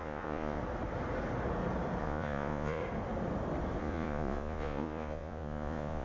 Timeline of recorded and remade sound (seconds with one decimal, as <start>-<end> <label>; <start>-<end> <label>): 0.0-0.6 remade; 0.6-2.0 recorded; 2.0-2.8 remade; 2.8-3.8 recorded; 3.8-6.0 remade